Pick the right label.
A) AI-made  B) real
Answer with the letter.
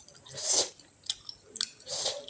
B